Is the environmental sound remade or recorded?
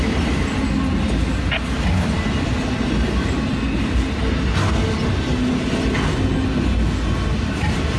recorded